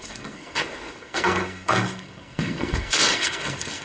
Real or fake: fake